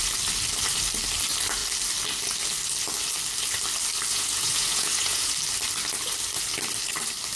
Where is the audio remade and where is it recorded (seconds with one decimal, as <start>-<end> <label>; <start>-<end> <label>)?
0.0-4.1 recorded; 4.1-5.3 remade; 5.3-7.4 recorded